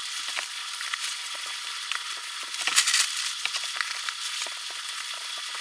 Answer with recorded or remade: recorded